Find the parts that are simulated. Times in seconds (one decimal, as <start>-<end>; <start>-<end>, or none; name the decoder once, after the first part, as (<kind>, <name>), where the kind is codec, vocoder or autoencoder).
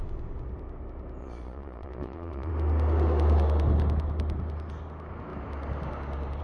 1.2-2.5 (vocoder, Vocos)